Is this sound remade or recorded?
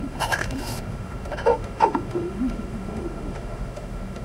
remade